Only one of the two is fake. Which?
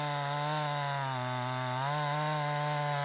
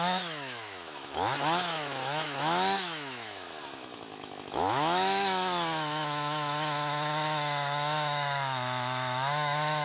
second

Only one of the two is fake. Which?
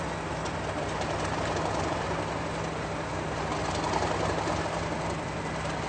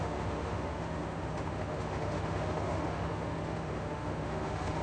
second